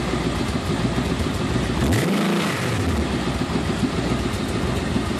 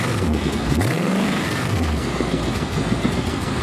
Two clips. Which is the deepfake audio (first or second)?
second